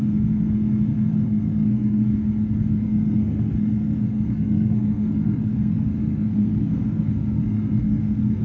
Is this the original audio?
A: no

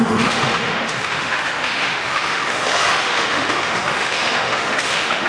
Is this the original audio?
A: no